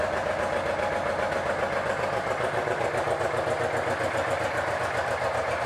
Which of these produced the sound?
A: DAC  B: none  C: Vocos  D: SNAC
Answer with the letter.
B